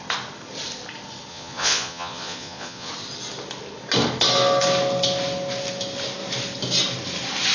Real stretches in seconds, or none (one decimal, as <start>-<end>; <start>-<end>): 0.0-1.3; 2.9-7.5